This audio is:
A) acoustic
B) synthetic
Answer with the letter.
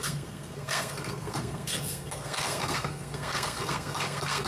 B